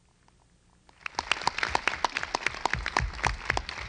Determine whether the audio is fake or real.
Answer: real